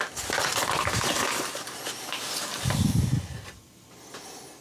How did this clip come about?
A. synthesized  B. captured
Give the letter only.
B